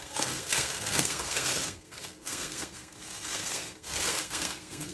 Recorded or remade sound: remade